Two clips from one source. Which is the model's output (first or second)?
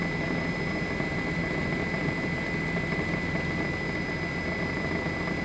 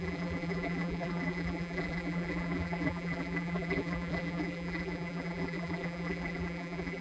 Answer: second